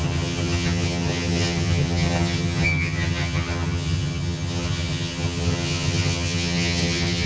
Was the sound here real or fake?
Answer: fake